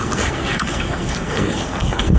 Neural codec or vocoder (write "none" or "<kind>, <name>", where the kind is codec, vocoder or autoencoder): codec, SNAC